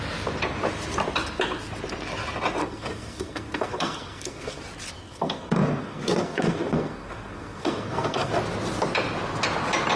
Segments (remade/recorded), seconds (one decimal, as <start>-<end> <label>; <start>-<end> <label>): 0.0-2.6 recorded; 2.6-4.6 remade; 4.6-5.0 recorded; 5.0-8.3 remade; 8.3-10.0 recorded